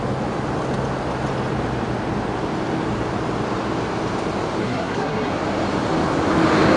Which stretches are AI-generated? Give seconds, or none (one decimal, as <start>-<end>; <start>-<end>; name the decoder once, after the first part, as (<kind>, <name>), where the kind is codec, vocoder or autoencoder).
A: 4.6-5.3 (codec, SNAC)